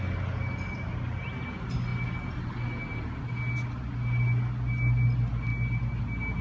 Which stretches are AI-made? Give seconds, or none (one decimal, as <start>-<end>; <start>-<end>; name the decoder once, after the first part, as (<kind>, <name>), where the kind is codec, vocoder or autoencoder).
none

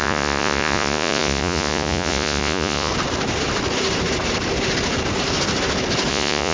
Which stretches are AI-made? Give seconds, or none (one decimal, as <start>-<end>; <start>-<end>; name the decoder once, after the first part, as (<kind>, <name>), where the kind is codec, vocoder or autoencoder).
0.0-2.9 (vocoder, Vocos); 6.1-6.5

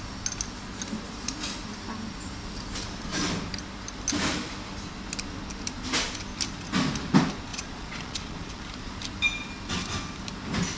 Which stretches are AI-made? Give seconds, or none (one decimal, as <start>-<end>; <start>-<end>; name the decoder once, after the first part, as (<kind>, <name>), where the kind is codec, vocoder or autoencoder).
7.5-8.6 (vocoder, Vocos)

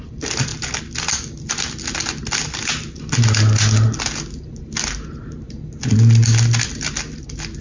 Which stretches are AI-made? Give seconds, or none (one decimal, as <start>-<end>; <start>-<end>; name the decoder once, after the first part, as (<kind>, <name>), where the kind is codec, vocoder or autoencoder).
none

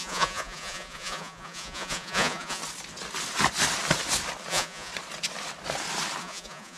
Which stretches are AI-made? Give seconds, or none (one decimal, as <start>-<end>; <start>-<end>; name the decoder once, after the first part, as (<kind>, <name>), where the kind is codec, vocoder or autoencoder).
0.0-2.6 (vocoder, Vocos); 4.5-4.9; 6.2-6.8

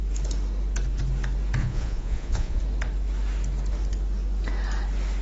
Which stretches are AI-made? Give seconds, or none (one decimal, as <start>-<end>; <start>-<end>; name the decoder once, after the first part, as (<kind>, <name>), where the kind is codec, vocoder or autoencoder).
1.6-2.6 (vocoder, Vocos)

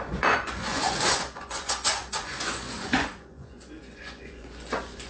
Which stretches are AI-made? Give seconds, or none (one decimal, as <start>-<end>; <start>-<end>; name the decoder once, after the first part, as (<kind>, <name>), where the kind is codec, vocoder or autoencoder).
0.0-5.1 (vocoder, Vocos)